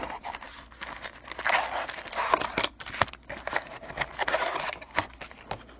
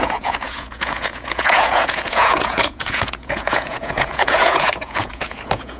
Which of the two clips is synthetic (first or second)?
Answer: second